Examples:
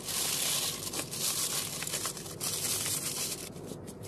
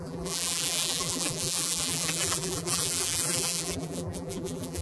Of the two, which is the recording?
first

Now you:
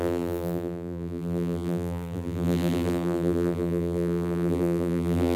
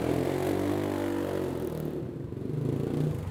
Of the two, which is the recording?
second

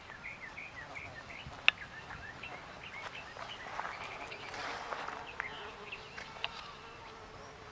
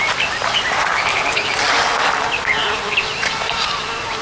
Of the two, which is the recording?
first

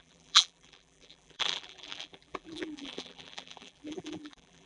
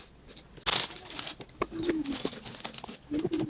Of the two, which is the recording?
second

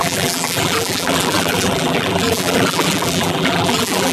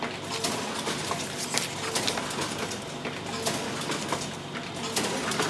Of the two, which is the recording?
second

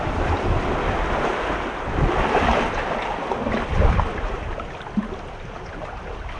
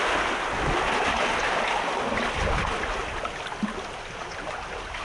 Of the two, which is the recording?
second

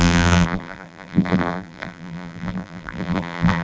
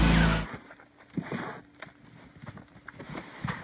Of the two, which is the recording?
second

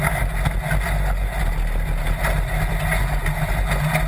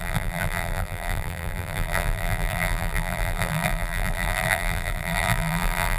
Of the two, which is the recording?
first